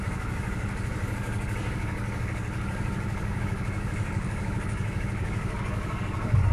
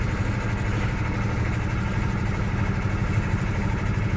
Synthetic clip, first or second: first